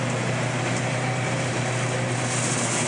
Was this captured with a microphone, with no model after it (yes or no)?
yes